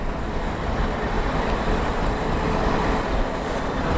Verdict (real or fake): real